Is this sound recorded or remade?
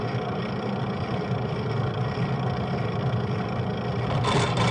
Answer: recorded